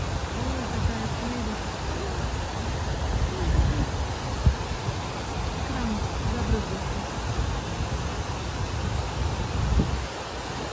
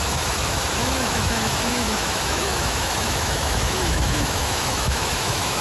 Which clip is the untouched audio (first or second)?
first